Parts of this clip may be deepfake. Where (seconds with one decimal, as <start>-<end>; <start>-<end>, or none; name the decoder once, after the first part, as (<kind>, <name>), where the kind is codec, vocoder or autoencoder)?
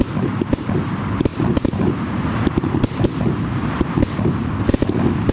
none